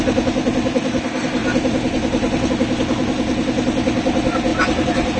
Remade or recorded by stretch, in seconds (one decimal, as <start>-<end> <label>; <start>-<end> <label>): 0.0-4.5 recorded; 4.5-5.2 remade